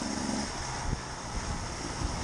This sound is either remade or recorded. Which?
recorded